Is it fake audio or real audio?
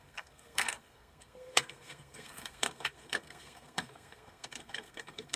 fake